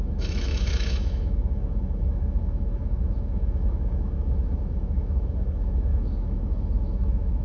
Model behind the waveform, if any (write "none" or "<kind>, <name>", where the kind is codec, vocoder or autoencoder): autoencoder, DAC-VAE